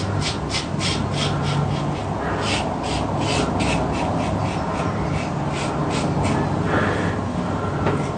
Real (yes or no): yes